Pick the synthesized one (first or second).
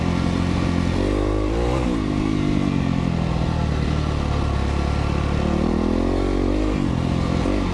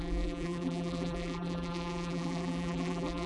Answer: second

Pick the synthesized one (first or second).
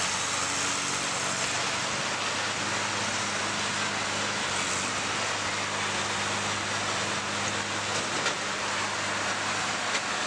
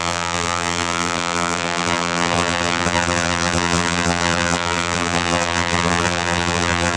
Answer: second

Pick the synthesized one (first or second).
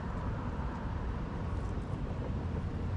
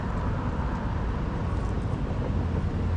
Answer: first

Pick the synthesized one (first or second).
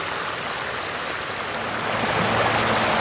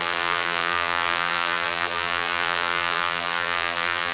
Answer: second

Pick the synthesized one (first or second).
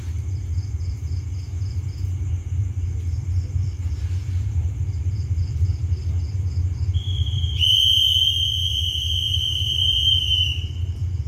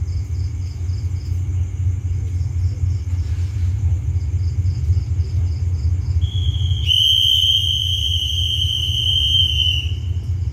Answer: first